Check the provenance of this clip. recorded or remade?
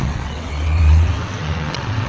remade